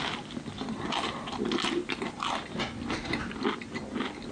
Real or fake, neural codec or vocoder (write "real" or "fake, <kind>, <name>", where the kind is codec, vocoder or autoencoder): real